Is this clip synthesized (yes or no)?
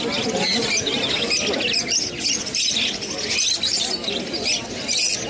no